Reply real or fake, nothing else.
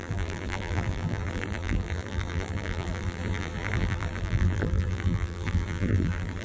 fake